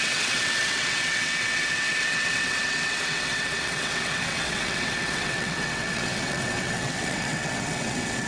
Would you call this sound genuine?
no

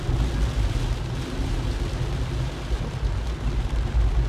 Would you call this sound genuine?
yes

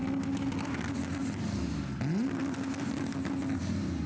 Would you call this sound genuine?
yes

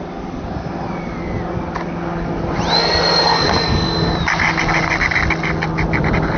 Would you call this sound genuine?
yes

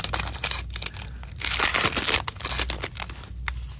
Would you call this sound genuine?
yes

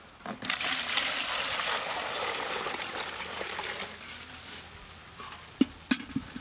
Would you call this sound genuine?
yes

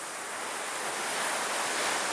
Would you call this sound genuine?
yes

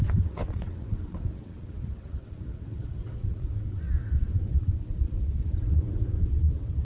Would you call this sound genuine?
no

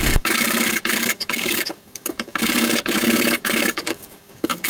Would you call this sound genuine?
no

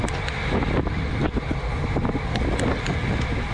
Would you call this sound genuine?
yes